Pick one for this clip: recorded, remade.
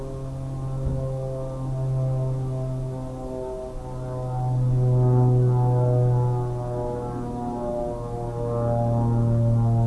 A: recorded